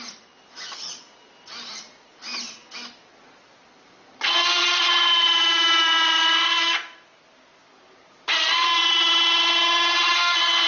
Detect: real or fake real